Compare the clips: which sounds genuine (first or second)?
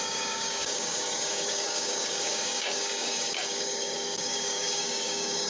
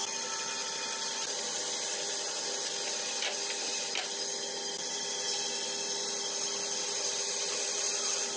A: second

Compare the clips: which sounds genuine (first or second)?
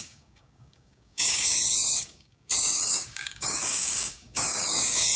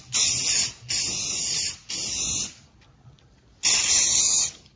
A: second